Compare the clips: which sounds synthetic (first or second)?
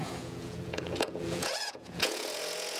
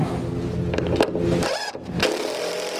first